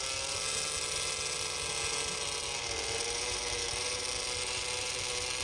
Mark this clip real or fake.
real